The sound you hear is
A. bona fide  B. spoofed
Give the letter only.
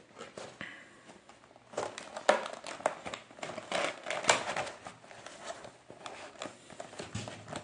A